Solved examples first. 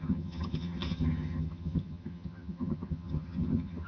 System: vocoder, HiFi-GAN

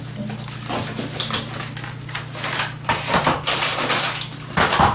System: none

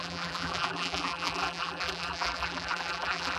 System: vocoder, BigVGAN v2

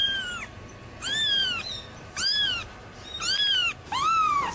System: vocoder, BigVGAN v2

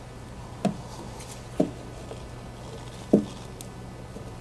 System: none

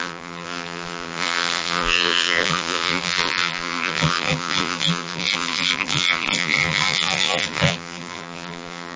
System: vocoder, BigVGAN v2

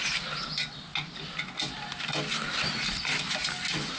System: none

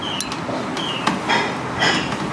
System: none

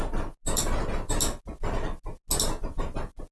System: none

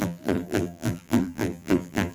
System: vocoder, BigVGAN v2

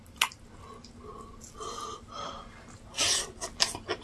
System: none